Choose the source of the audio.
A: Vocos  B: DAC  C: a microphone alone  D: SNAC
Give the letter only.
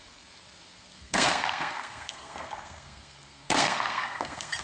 D